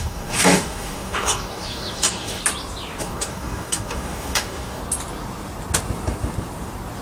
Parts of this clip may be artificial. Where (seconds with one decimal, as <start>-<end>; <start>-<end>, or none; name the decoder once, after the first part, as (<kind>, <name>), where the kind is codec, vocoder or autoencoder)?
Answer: 0.0-2.4 (codec, DAC); 3.0-4.8